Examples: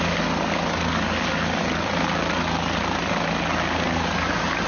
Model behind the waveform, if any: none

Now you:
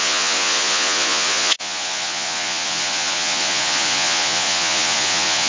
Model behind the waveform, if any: vocoder, Vocos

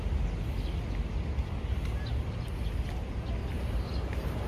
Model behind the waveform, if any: none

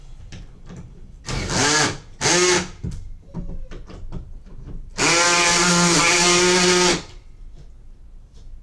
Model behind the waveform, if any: none